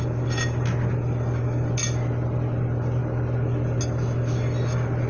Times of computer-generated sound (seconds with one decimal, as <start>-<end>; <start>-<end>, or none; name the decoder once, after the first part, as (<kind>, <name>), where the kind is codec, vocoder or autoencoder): none